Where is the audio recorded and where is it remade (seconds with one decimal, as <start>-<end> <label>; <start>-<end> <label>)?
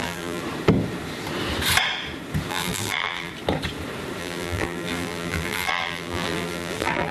0.0-0.4 remade; 0.4-2.5 recorded; 2.5-3.3 remade; 3.3-4.2 recorded; 4.2-7.1 remade